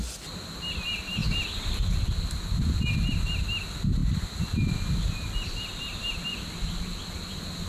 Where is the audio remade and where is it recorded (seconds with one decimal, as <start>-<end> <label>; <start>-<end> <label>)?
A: 0.0-7.7 recorded